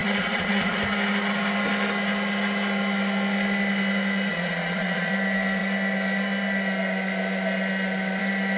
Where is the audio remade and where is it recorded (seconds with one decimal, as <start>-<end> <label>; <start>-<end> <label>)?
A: 0.0-0.8 remade; 0.8-4.3 recorded; 4.3-5.1 remade; 5.1-8.6 recorded